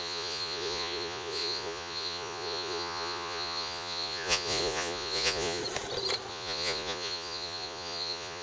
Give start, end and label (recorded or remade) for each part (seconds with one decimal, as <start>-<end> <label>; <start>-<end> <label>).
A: 0.0-5.6 remade; 5.6-6.3 recorded; 6.3-8.4 remade